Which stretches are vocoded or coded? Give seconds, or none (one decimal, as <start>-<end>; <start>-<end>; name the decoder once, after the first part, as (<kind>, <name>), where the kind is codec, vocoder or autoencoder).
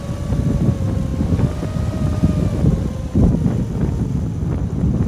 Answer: none